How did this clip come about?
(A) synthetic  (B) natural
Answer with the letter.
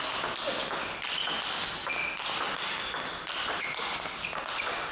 B